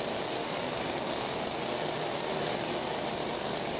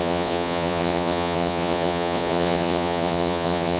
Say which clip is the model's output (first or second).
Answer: second